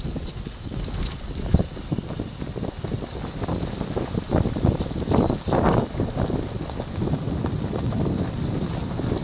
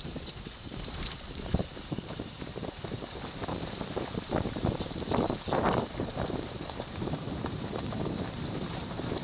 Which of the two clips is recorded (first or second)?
first